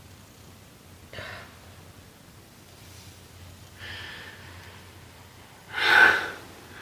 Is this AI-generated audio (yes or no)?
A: no